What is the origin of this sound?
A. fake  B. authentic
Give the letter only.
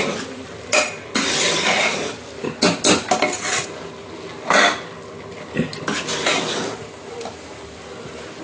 B